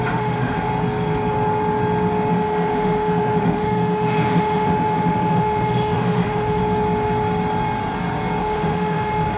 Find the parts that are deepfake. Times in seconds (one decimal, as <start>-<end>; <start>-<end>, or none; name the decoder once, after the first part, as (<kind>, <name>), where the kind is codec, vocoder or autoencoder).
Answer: 0.0-0.7 (autoencoder, DAC-VAE); 2.3-6.6; 8.4-9.4